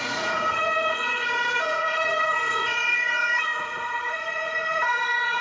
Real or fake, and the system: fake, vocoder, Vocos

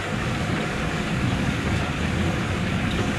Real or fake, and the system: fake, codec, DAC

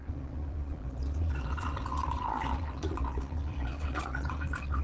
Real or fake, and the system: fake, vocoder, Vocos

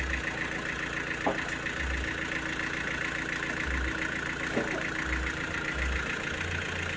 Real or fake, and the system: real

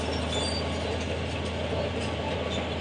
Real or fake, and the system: real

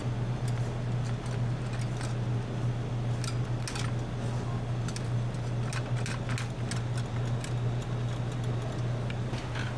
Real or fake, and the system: real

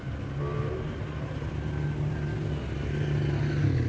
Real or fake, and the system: real